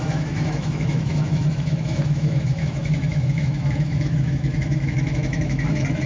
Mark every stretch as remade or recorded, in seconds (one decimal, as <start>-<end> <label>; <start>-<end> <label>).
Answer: 0.0-6.1 remade